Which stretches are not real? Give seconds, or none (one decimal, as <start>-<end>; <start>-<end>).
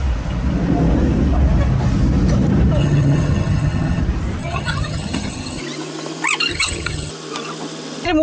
2.8-4.0; 4.4-5.6; 6.5-7.1